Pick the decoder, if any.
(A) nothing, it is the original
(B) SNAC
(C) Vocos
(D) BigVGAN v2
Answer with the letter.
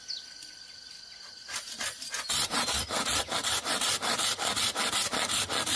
A